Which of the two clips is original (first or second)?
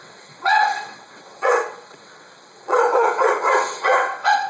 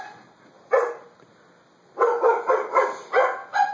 second